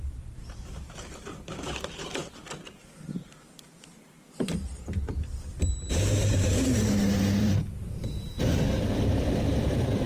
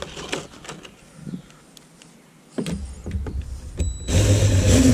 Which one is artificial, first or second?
first